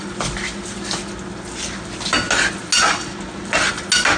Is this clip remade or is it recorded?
recorded